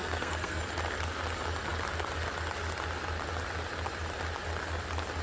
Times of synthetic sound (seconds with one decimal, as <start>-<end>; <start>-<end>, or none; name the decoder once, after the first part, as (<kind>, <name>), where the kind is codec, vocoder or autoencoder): 0.0-0.6 (codec, SNAC)

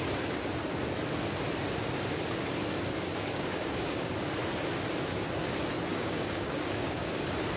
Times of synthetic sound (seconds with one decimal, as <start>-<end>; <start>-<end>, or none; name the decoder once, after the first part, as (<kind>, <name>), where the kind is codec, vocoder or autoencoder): 3.1-4.1 (codec, DAC); 5.9-7.1

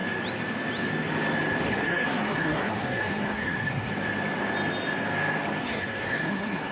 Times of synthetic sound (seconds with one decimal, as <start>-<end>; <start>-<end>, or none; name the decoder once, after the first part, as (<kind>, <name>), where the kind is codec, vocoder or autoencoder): 1.7-3.9 (codec, SNAC); 5.6-6.7

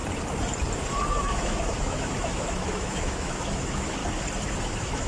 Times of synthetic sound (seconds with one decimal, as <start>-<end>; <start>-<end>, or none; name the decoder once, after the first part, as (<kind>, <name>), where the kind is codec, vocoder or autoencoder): 1.2-4.0 (autoencoder, DAC-VAE); 4.6-5.1

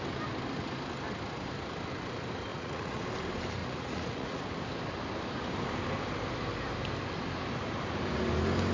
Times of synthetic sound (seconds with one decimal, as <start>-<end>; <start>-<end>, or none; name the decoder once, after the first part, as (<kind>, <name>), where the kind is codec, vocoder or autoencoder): 2.5-3.0 (vocoder, Vocos); 3.6-4.4